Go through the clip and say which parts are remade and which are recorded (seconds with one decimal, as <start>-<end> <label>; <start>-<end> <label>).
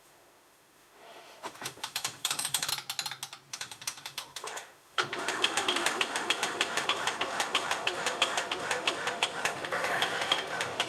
0.0-2.7 remade; 2.7-3.5 recorded; 3.5-10.9 remade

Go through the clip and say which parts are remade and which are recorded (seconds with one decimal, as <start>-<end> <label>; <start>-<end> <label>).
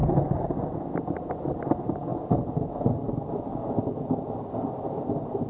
0.0-5.5 recorded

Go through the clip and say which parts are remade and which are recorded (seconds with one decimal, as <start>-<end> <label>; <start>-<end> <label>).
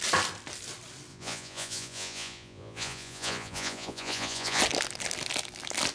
0.0-1.1 recorded; 1.1-4.6 remade; 4.6-5.9 recorded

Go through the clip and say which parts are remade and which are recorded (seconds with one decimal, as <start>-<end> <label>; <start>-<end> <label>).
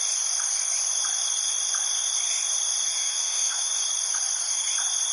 0.0-3.0 recorded; 3.0-3.7 remade; 3.7-5.1 recorded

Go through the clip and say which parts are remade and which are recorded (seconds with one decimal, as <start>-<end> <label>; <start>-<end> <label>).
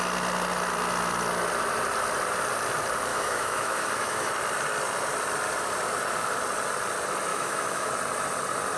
0.0-3.1 recorded; 3.1-4.3 remade; 4.3-7.3 recorded; 7.3-7.9 remade; 7.9-8.8 recorded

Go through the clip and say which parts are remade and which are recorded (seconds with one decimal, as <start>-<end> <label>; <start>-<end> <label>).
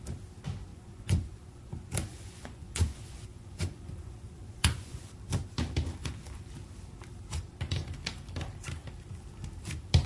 0.0-0.7 recorded; 0.7-1.7 remade; 1.7-2.1 recorded; 2.1-5.1 remade; 5.1-6.0 recorded; 6.0-6.5 remade; 6.5-10.1 recorded